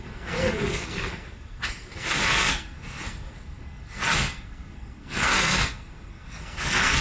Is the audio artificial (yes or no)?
yes